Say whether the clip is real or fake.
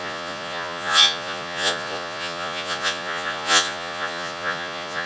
fake